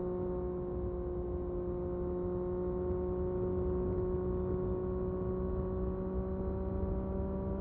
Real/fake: real